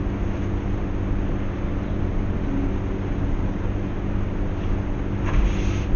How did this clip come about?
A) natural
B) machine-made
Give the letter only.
A